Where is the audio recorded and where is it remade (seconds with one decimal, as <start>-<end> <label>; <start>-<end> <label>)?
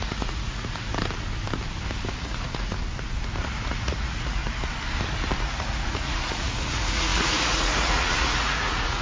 0.0-0.9 remade; 0.9-2.2 recorded; 2.2-2.8 remade; 2.8-3.4 recorded; 3.4-4.4 remade; 4.4-5.4 recorded; 5.4-9.0 remade